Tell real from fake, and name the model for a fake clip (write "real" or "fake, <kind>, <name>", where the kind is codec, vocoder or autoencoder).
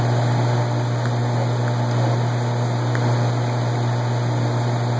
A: real